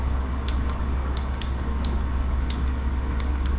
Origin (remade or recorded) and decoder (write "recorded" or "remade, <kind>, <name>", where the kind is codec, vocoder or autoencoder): remade, codec, DAC